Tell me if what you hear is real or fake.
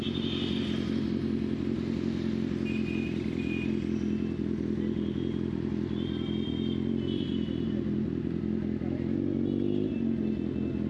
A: real